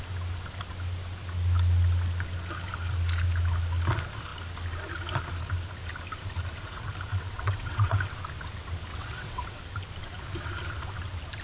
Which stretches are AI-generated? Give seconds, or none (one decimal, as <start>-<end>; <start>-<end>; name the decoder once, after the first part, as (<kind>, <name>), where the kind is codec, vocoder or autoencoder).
7.1-8.0 (vocoder, WaveNeXt); 8.9-9.6